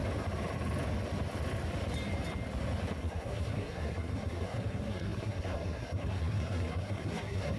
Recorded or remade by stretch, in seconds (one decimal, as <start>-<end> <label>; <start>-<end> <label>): 0.0-3.0 recorded; 3.0-7.6 remade